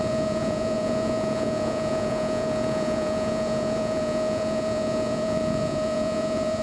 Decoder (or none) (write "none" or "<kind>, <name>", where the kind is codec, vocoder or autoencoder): vocoder, Vocos